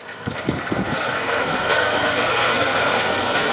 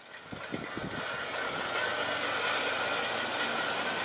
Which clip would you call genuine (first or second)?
second